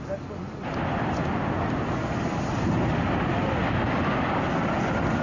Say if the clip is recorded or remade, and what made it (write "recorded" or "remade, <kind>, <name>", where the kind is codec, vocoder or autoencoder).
recorded